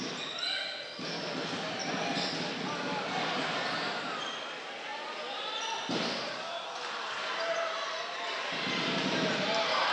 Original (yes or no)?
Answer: yes